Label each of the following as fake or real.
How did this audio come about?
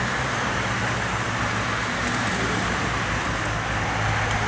real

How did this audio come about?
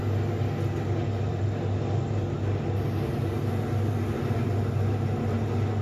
real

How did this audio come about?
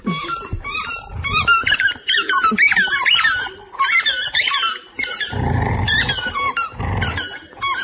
fake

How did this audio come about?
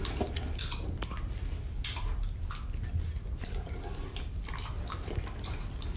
real